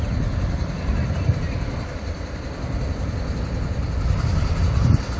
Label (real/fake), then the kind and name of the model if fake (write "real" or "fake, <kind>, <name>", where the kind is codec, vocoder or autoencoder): real